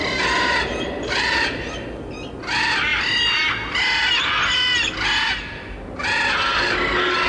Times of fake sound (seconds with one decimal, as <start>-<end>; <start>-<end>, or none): none